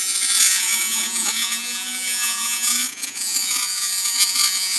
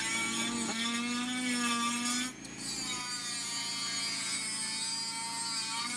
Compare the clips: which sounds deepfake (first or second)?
first